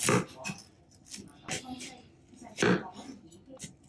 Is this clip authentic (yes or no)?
yes